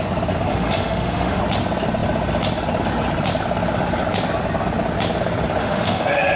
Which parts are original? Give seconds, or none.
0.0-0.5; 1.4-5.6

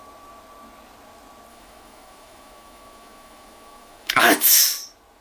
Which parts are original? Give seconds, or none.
0.0-1.5; 4.6-5.2

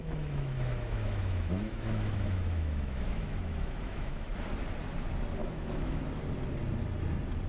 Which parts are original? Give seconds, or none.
4.3-5.4; 6.0-7.5

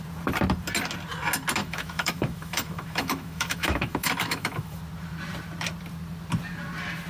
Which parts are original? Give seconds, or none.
0.0-1.6; 4.8-7.1